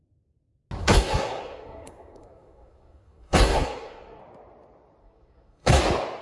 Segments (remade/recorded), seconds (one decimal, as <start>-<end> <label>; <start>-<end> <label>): 0.0-0.8 recorded; 0.8-4.2 remade; 4.2-5.0 recorded; 5.0-5.8 remade; 5.8-6.2 recorded